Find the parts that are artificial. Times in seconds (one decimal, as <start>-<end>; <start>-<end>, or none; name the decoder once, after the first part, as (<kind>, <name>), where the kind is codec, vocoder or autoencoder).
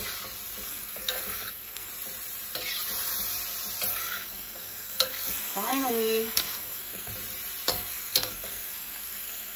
0.7-1.9 (codec, SNAC); 3.9-7.1; 7.7-9.6